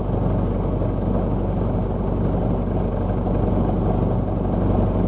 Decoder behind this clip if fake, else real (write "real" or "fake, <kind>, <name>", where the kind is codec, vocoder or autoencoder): real